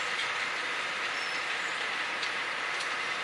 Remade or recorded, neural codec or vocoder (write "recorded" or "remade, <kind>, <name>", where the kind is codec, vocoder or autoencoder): remade, vocoder, BigVGAN v2